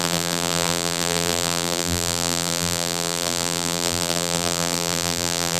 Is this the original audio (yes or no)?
no